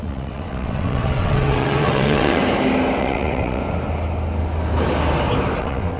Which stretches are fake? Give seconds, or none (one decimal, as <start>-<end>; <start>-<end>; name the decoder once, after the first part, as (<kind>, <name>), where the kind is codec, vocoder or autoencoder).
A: 0.0-2.4 (vocoder, WaveNeXt); 3.0-3.6; 5.6-6.0